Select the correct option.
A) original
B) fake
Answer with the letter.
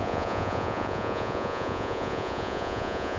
B